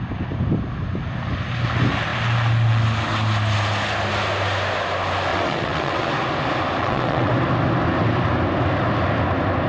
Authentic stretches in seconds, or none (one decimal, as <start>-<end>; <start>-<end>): 0.0-5.3; 6.1-6.8; 7.3-9.7

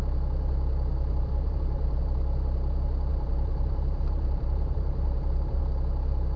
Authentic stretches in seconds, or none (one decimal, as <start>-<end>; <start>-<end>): 0.0-0.9; 2.0-3.1; 5.6-6.4

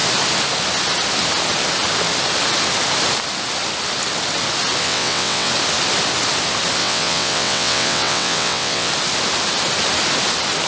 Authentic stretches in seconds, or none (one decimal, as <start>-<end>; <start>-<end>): 0.0-4.8; 5.5-6.8; 8.9-10.7